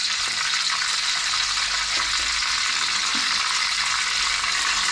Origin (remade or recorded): recorded